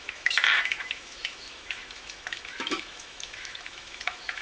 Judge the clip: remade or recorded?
remade